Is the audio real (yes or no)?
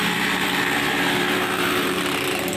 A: no